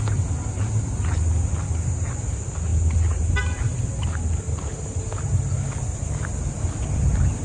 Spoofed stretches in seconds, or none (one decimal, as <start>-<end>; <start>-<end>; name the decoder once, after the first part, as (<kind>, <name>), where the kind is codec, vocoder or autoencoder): none